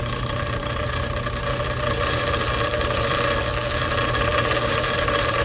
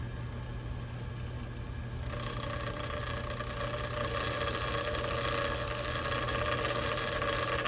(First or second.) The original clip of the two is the second